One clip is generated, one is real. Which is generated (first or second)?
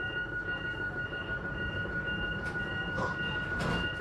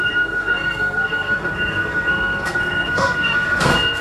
second